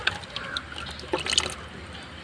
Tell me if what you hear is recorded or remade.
recorded